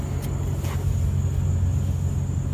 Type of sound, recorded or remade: recorded